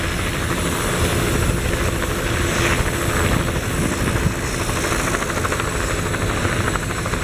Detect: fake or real real